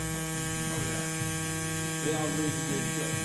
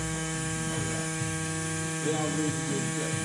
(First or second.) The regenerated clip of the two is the second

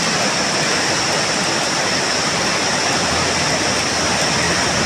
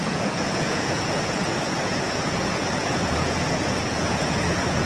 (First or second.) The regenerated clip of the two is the second